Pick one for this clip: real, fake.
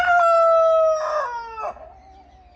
real